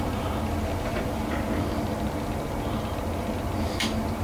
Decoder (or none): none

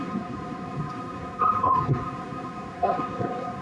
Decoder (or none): codec, SNAC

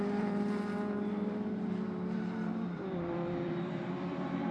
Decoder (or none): vocoder, BigVGAN v2